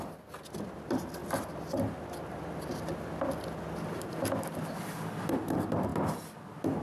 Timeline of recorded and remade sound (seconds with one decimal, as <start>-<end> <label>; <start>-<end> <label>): 0.0-6.8 recorded